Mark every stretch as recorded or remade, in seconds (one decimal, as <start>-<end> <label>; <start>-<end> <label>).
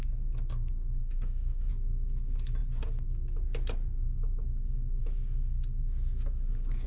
0.0-1.0 recorded; 1.0-1.7 remade; 1.7-6.9 recorded